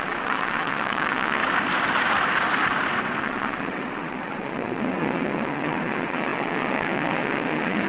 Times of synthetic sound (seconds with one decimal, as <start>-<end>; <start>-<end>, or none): 0.0-1.4; 3.2-7.9